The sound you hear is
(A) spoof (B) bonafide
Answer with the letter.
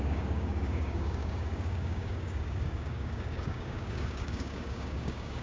A